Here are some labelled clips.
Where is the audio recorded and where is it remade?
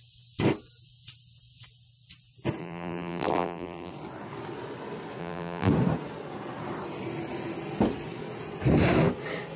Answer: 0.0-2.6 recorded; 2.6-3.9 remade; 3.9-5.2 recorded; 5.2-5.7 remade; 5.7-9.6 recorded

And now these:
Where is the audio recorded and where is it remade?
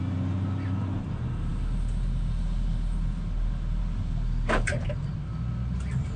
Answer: 0.0-6.2 recorded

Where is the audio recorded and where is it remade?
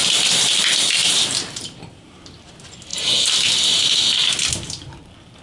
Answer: 0.0-1.0 recorded; 1.0-2.5 remade; 2.5-5.4 recorded